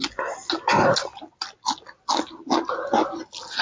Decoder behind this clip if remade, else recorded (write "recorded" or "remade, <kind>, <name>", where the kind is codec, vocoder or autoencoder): recorded